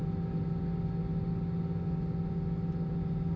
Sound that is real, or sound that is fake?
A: real